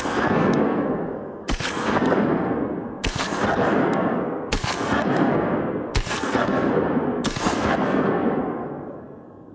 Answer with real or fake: fake